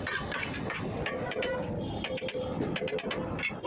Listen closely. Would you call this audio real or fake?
real